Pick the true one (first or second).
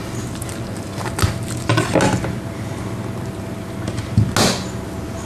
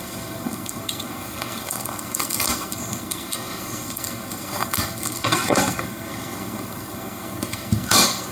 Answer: first